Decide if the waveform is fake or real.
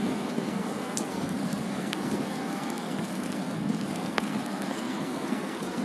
fake